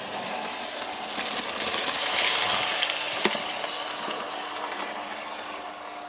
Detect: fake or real real